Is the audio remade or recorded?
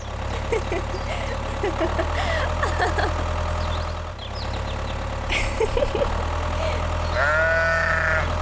recorded